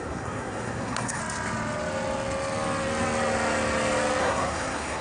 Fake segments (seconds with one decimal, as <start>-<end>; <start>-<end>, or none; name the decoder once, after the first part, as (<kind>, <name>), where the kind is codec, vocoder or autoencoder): 0.0-1.2 (codec, SNAC); 4.2-5.0